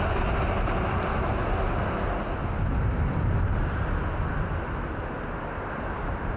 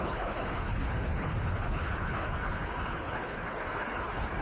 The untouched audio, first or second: first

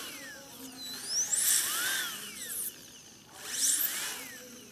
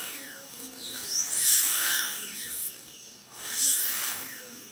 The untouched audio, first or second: first